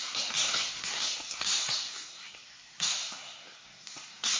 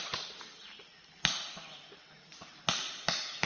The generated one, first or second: first